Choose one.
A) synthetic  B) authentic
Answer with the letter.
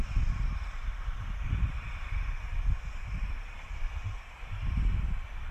B